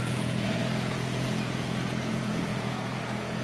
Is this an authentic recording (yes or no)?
no